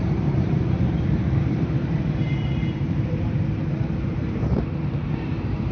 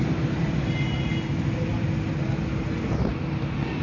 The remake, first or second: first